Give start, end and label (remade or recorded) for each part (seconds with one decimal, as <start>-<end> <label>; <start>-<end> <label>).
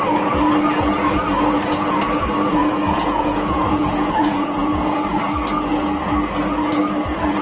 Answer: 0.0-2.6 recorded; 2.6-5.2 remade; 5.2-7.4 recorded